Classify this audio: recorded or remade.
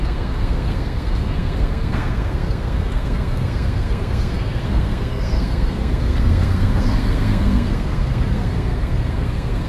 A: remade